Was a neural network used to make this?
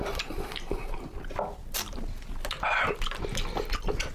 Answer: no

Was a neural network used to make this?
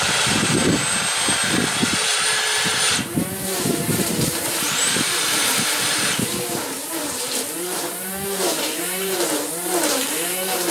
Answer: yes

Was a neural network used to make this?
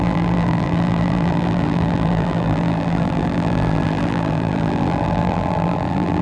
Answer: yes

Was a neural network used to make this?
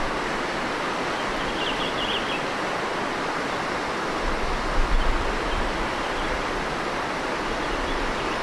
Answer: no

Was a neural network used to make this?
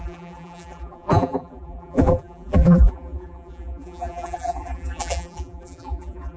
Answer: yes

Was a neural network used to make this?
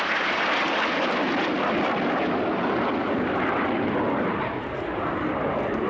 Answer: no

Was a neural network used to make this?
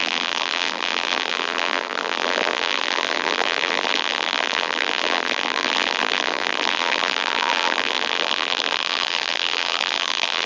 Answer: yes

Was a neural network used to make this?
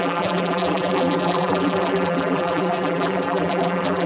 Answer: yes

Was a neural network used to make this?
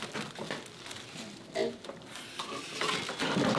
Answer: no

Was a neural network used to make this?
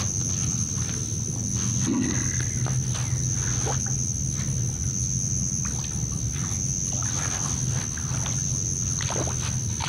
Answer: no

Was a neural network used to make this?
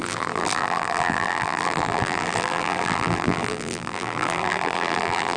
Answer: yes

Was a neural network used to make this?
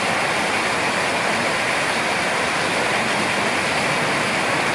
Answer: no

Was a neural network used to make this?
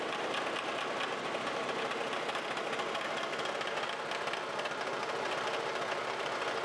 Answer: no